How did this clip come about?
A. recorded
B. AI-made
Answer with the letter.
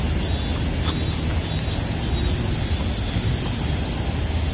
A